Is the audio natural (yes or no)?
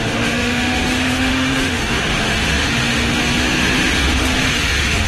no